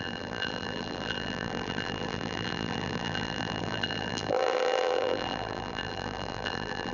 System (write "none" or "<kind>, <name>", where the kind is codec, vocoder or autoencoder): vocoder, BigVGAN v2